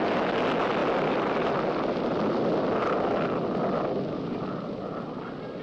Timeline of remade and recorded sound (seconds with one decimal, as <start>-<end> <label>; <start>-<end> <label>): 0.0-5.6 recorded